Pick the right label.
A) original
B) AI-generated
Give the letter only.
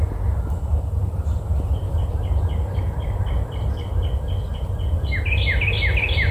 A